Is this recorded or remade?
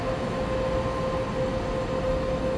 recorded